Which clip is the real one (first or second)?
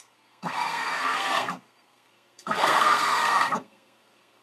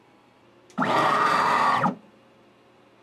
second